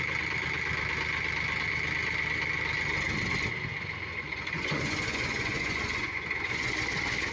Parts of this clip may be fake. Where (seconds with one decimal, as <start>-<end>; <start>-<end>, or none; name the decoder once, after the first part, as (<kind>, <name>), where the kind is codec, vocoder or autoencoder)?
4.1-6.7 (vocoder, Vocos)